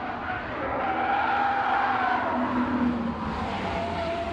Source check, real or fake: real